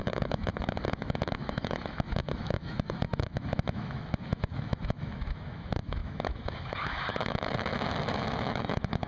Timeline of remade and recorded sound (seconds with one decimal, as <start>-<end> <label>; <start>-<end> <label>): 0.0-9.1 remade